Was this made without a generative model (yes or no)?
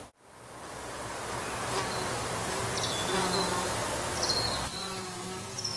yes